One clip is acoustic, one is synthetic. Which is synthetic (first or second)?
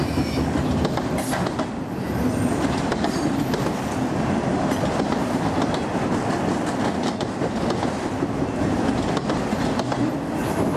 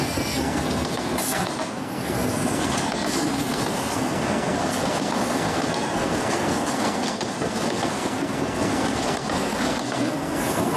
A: second